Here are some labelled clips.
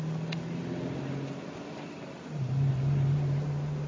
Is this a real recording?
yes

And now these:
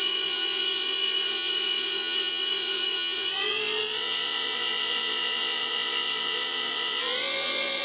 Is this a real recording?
no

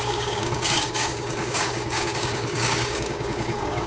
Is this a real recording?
no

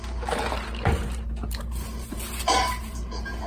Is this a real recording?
no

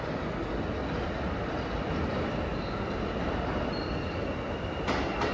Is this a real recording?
yes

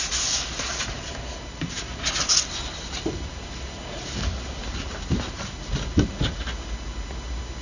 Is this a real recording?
yes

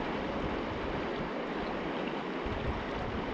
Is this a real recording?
yes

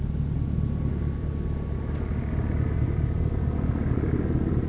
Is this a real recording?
yes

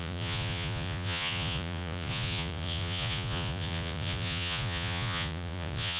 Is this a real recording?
no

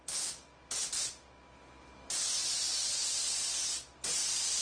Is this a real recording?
yes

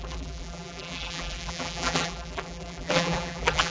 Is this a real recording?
no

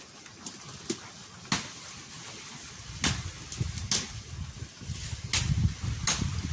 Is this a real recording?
yes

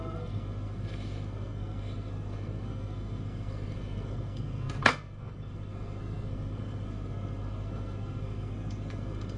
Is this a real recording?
no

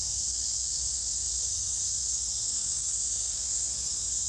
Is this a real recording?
no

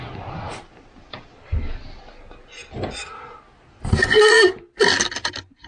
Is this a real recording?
yes